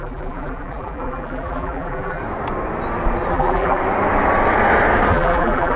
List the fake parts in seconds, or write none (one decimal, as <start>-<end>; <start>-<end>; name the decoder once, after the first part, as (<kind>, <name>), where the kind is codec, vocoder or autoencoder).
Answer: 0.0-2.2 (vocoder, BigVGAN v2); 3.3-3.8; 5.1-5.8